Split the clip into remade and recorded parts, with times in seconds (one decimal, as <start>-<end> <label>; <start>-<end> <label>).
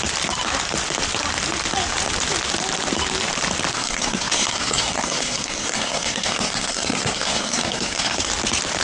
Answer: 0.0-3.7 recorded; 3.7-8.3 remade; 8.3-8.8 recorded